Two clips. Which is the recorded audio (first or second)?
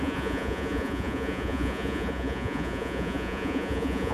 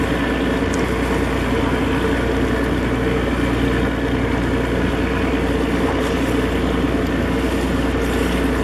second